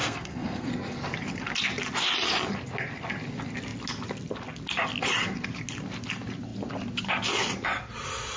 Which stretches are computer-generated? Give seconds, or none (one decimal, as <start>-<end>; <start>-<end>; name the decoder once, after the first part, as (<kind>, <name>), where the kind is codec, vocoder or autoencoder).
0.0-0.7 (codec, SNAC)

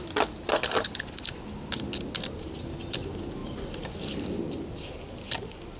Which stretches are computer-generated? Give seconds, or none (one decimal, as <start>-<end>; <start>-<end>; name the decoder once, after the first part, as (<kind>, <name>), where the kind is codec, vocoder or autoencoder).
none

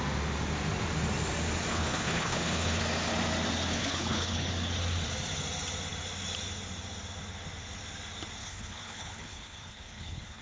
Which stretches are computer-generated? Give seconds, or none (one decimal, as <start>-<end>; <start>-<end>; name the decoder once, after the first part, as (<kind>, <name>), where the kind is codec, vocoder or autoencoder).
1.7-2.8 (codec, HILCodec); 3.7-4.5; 8.4-10.4